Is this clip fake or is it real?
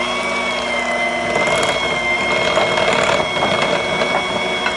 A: real